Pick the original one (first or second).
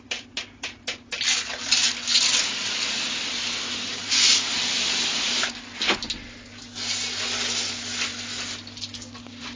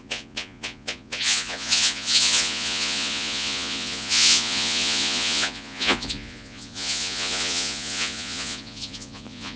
first